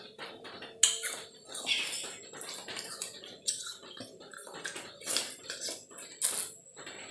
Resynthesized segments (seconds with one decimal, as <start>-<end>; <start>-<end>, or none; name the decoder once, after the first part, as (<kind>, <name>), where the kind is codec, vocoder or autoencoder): 2.9-4.0 (vocoder, Vocos)